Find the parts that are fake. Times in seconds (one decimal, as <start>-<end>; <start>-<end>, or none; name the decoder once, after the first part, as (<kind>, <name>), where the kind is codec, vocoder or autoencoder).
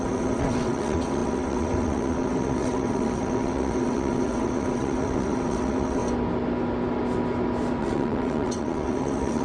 0.0-6.0 (vocoder, WaveNeXt); 7.8-9.4